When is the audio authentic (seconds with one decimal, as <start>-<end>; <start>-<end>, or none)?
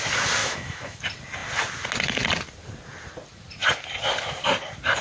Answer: 0.0-0.4; 1.0-5.0